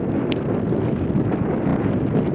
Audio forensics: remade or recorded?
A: recorded